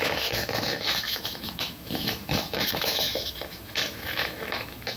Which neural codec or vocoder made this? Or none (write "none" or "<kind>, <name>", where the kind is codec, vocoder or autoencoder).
autoencoder, DAC-VAE